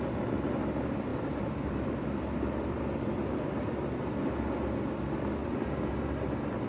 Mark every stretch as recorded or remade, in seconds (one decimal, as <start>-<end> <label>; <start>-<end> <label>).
0.0-1.1 recorded; 1.1-3.4 remade; 3.4-5.4 recorded; 5.4-5.9 remade; 5.9-6.7 recorded